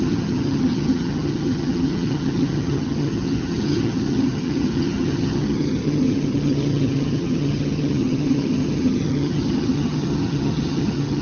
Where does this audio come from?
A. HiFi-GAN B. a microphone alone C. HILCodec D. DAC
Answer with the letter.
A